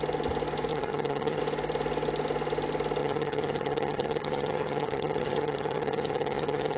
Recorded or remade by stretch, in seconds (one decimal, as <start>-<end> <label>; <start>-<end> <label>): 0.0-0.7 recorded; 0.7-1.4 remade; 1.4-3.0 recorded; 3.0-6.8 remade